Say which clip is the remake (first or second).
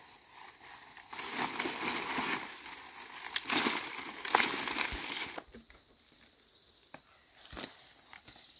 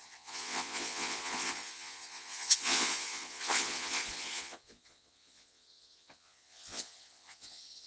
second